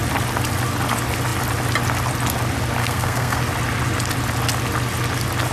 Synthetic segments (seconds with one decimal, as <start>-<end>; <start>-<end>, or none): 2.8-3.4